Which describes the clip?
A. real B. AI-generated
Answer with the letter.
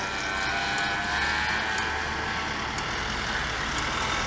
A